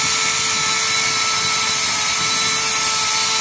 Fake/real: real